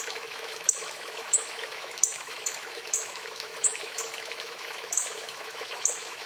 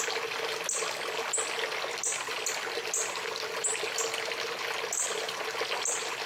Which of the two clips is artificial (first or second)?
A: first